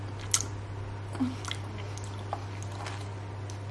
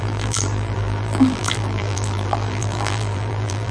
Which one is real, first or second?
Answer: first